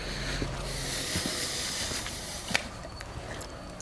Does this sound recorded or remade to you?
recorded